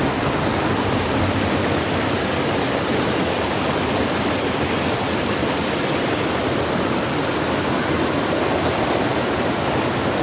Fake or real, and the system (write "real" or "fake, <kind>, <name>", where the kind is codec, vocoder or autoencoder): real